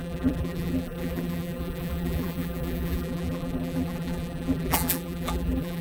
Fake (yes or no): yes